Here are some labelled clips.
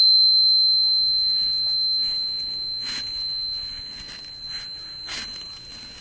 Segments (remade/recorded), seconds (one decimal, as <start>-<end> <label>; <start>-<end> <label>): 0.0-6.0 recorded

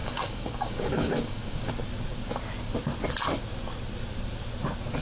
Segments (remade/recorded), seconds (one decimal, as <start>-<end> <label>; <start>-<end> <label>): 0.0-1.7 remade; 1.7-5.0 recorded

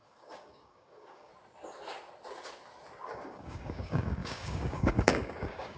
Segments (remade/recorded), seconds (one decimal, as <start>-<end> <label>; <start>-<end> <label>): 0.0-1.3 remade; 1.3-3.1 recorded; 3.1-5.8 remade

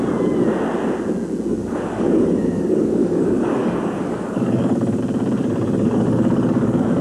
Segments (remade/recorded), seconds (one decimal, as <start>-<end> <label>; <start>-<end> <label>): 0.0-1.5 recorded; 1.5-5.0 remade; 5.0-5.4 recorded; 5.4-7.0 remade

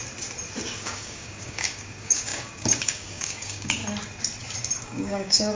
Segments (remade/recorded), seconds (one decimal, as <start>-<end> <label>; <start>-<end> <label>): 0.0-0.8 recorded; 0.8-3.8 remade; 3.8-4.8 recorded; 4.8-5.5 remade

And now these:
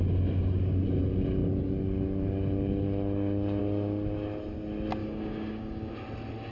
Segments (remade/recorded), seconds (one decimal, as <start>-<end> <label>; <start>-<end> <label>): 0.0-5.0 recorded; 5.0-5.9 remade; 5.9-6.5 recorded

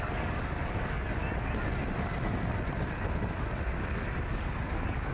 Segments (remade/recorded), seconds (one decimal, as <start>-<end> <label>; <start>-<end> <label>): 0.0-1.2 remade; 1.2-4.3 recorded; 4.3-5.1 remade

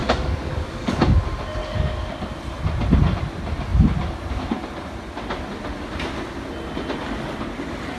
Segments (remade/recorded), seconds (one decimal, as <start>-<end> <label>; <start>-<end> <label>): 0.0-1.0 remade; 1.0-1.6 recorded; 1.6-2.2 remade; 2.2-8.0 recorded